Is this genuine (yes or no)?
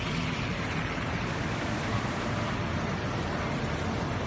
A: yes